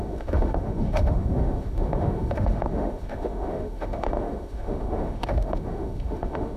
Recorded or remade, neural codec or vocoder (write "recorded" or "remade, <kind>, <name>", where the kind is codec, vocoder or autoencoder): remade, autoencoder, DAC-VAE